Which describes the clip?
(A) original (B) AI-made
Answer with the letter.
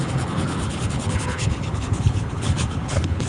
B